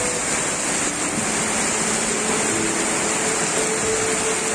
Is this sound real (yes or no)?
yes